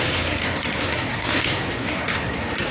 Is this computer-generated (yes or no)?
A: yes